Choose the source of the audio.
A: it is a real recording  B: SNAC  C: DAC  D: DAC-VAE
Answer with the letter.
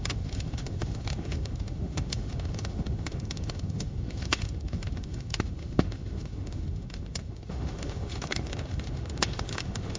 D